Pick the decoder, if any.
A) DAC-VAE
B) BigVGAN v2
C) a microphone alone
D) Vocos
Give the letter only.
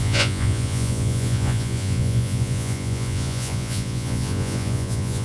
D